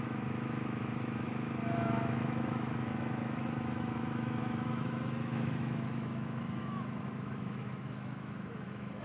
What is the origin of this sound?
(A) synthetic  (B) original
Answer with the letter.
A